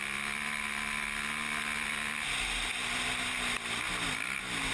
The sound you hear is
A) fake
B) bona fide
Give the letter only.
B